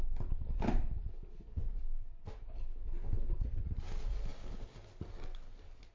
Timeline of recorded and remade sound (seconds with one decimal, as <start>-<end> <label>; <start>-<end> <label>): 0.0-5.9 recorded